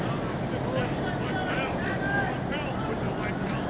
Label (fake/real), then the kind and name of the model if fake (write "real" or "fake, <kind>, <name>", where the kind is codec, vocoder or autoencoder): real